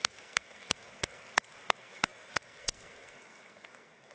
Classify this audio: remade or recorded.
remade